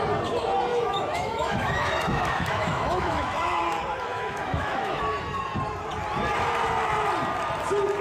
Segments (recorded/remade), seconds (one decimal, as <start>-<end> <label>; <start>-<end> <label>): 0.0-0.7 recorded; 0.7-3.6 remade; 3.6-4.1 recorded; 4.1-5.0 remade; 5.0-8.0 recorded